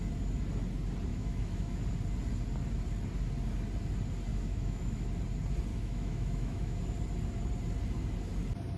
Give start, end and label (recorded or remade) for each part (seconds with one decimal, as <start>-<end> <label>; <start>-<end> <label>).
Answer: 0.0-1.1 recorded; 1.1-1.8 remade; 1.8-4.3 recorded; 4.3-5.1 remade; 5.1-5.7 recorded; 5.7-6.8 remade; 6.8-8.8 recorded